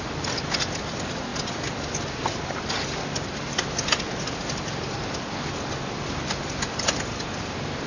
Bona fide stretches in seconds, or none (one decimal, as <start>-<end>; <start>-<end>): 0.0-7.9

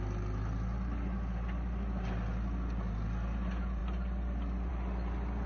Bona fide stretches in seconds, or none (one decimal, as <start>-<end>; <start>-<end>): 0.0-5.5